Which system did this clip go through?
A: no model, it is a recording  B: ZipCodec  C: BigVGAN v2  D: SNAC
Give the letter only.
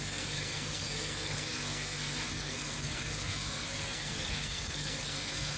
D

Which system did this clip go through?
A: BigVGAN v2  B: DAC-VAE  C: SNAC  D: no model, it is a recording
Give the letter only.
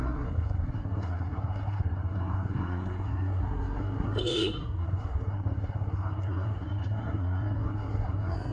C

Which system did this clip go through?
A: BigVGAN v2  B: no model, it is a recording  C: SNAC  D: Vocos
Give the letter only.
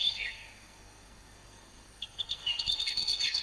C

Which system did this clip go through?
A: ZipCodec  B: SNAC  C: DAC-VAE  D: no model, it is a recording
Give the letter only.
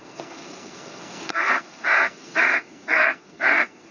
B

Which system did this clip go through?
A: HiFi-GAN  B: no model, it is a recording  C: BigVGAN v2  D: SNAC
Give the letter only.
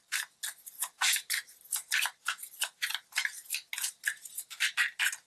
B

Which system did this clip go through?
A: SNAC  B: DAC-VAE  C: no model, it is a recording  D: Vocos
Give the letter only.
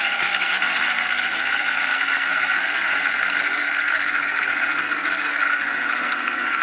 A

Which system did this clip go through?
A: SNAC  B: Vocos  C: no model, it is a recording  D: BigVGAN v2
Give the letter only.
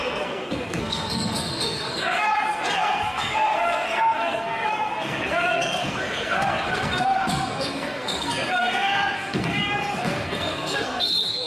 A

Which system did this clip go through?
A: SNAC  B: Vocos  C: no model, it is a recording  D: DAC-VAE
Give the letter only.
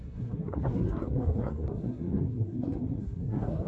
A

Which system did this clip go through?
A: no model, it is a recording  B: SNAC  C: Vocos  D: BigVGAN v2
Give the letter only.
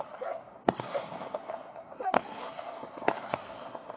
B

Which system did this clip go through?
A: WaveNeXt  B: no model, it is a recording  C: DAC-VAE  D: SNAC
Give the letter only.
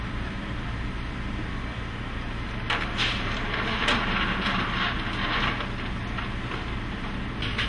B